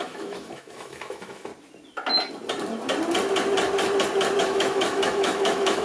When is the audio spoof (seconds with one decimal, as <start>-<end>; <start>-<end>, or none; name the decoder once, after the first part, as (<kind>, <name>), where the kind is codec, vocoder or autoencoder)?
0.0-1.5 (autoencoder, DAC-VAE); 4.4-5.8